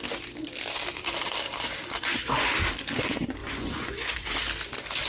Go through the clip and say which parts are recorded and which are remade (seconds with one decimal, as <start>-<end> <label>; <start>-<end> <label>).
0.0-3.4 recorded; 3.4-4.4 remade; 4.4-5.1 recorded